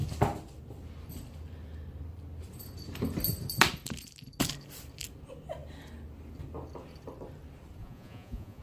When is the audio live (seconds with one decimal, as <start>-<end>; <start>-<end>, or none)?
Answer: 0.0-7.8